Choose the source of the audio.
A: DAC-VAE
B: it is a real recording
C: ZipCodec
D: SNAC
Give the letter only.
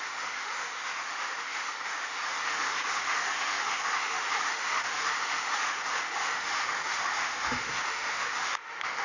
A